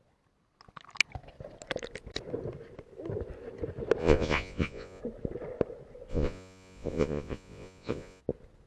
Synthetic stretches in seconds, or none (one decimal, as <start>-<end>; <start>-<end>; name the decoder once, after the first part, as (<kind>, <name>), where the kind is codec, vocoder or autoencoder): 4.0-5.0 (vocoder, Vocos); 6.1-8.2